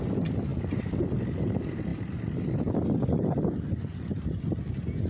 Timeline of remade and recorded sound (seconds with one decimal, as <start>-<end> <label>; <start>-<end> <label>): 0.0-5.1 recorded